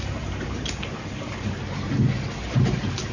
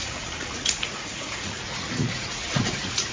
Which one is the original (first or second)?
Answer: first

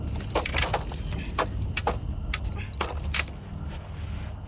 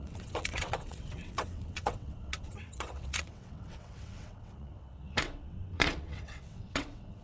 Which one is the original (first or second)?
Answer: first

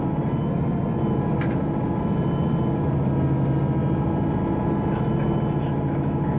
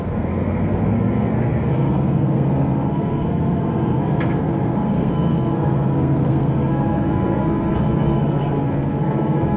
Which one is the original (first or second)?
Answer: first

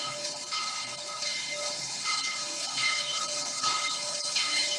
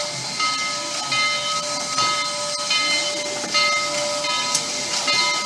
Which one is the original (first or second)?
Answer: second